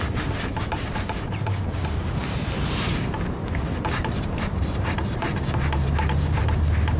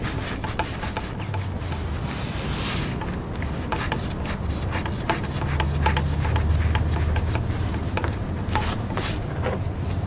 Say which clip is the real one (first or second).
second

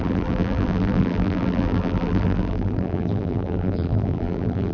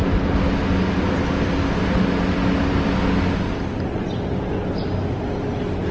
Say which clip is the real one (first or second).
second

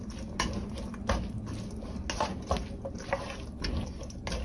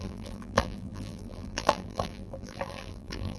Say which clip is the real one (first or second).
first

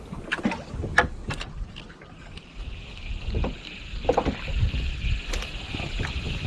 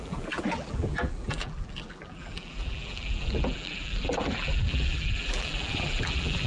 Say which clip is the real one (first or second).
first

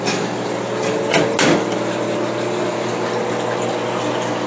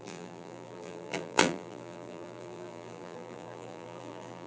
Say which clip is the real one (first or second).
first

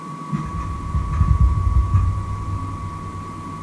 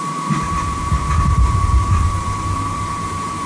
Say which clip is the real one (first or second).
first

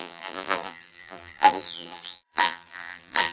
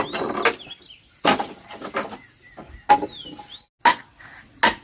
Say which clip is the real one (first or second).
second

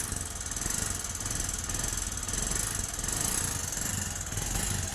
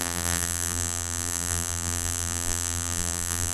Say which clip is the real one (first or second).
first